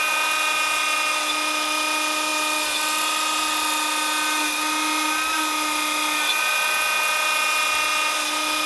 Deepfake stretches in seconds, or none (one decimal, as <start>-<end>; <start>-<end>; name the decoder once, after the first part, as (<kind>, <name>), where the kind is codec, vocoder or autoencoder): none